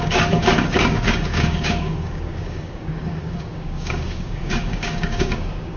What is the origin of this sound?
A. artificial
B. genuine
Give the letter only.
A